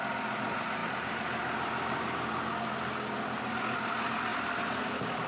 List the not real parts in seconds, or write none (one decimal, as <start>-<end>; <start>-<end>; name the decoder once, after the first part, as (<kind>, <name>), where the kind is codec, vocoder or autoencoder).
none